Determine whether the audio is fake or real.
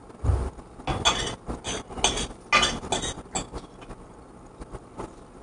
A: real